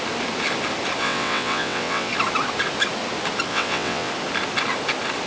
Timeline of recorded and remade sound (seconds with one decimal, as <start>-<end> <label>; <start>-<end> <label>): 0.0-1.0 recorded; 1.0-2.1 remade; 2.1-3.5 recorded; 3.5-4.1 remade; 4.1-5.3 recorded